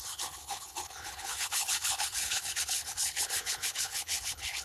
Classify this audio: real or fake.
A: fake